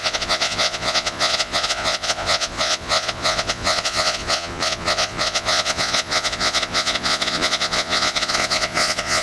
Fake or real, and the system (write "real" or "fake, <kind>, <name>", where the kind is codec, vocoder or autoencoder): fake, vocoder, Vocos